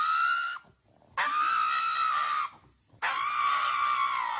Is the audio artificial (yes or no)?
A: no